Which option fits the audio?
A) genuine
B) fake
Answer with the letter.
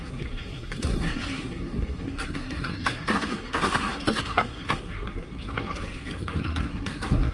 B